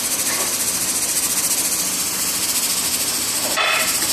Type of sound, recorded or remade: recorded